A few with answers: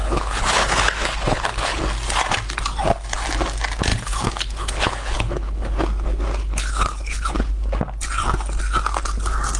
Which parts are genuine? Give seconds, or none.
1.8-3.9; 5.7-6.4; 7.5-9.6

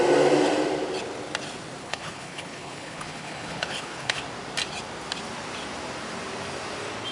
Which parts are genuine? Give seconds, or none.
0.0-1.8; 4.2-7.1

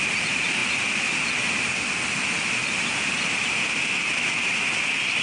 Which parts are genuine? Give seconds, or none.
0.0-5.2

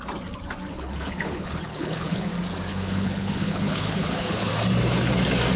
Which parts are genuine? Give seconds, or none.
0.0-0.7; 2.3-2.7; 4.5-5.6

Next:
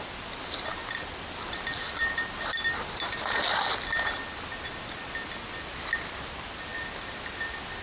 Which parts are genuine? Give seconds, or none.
0.0-7.8